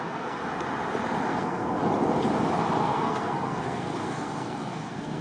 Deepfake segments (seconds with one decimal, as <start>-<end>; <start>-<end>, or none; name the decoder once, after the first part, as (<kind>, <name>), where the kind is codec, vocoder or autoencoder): 0.0-0.4 (codec, SNAC); 1.3-1.8; 2.8-5.2